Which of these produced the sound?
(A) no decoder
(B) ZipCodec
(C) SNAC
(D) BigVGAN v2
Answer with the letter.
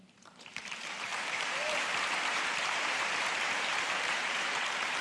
D